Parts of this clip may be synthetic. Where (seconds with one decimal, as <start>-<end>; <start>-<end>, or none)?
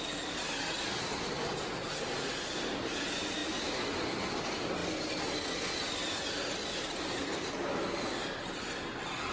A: none